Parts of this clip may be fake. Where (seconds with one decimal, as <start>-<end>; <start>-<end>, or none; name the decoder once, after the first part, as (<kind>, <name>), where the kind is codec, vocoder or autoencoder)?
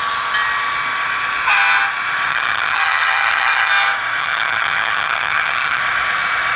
2.3-3.7 (vocoder, HiFi-GAN); 4.2-5.8